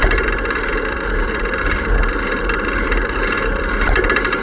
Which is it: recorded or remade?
remade